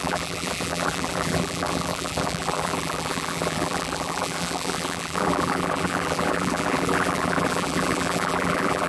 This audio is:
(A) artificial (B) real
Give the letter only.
A